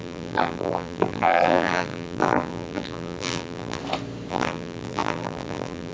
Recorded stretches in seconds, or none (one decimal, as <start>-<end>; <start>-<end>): 3.8-4.3